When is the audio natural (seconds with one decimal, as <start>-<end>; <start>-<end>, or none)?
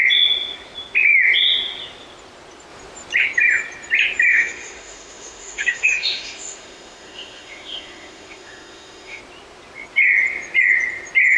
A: 0.0-4.3; 9.2-11.4